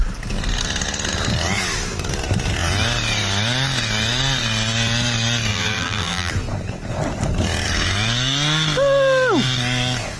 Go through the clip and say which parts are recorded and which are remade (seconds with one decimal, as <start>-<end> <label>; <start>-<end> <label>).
0.0-5.5 recorded; 5.5-6.3 remade; 6.3-10.2 recorded